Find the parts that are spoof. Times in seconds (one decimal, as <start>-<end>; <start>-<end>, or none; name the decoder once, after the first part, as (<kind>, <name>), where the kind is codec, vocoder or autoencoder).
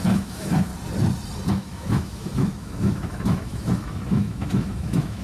0.0-0.7 (autoencoder, DAC-VAE); 1.5-5.2